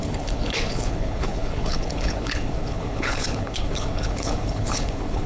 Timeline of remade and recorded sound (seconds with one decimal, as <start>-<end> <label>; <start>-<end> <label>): 0.0-5.3 remade